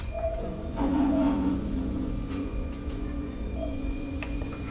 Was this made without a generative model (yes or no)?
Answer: no